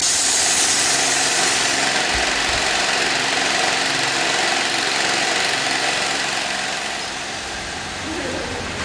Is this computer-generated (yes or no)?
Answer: yes